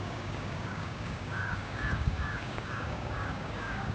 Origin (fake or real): fake